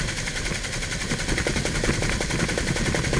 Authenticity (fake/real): real